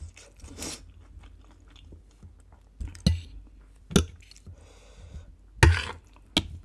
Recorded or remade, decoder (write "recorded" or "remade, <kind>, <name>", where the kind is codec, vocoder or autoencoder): recorded